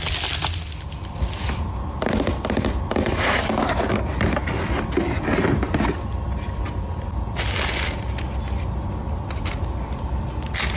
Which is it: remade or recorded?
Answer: recorded